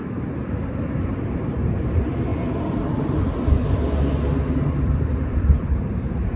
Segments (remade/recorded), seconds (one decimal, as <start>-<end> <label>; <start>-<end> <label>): 0.0-2.3 remade; 2.3-4.7 recorded; 4.7-6.4 remade